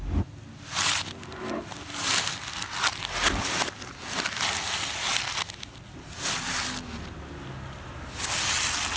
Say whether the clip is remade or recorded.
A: recorded